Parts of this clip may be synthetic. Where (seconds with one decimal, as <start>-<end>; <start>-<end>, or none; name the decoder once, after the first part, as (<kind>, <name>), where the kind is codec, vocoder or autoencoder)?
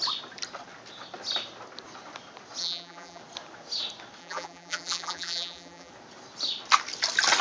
2.6-3.2 (vocoder, BigVGAN v2); 4.2-5.9